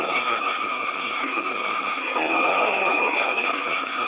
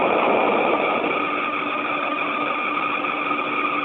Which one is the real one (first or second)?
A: second